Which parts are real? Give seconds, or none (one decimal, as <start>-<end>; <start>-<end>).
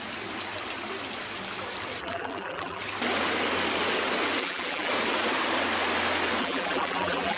0.0-2.0; 2.8-4.4; 4.9-6.4